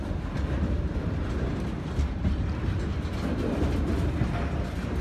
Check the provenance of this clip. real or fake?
real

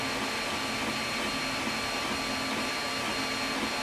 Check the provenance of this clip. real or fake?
real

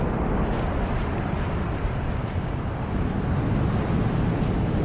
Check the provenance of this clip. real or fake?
real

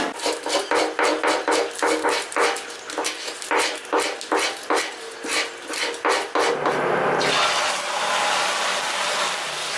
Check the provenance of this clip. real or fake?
real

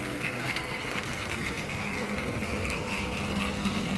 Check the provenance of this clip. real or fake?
fake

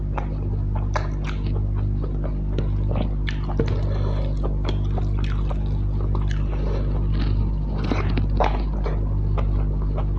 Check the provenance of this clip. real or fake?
real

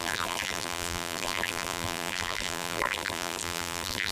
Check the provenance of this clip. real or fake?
fake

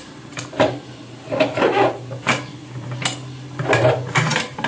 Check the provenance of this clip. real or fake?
real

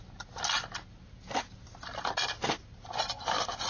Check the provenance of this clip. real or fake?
real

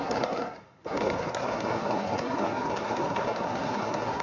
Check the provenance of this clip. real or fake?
fake